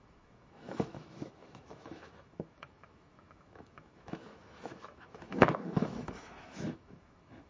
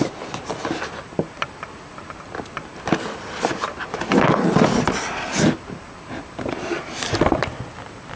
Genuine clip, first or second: second